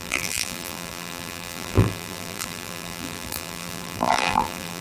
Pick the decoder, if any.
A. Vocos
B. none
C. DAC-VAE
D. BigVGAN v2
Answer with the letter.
D